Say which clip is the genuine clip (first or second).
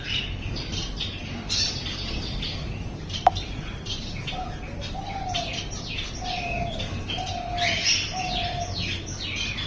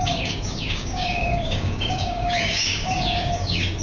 first